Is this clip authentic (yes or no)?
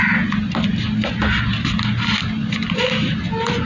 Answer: yes